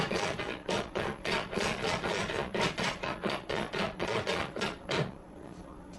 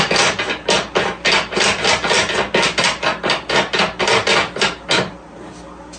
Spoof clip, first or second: first